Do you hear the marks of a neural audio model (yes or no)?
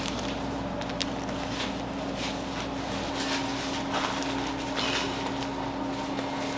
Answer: no